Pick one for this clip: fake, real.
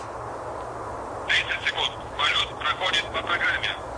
fake